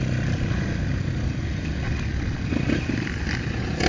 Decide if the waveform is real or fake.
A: real